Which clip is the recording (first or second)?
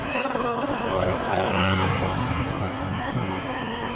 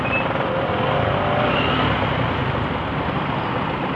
second